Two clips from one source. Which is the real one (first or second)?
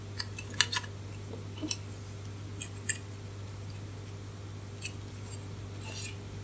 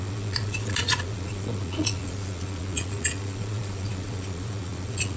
first